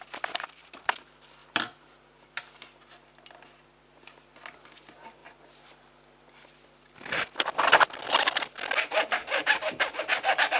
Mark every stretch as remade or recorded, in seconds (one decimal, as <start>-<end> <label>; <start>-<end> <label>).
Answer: 0.0-10.6 recorded